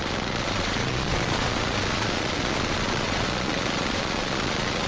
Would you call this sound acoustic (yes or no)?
no